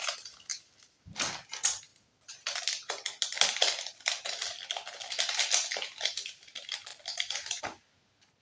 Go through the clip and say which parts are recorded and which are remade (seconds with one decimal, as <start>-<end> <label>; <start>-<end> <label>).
0.0-8.4 recorded